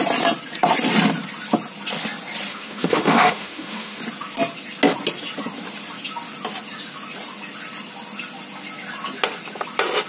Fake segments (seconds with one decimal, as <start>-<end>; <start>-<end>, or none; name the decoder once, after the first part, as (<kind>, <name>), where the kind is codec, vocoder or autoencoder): 2.5-4.0 (autoencoder, DAC-VAE)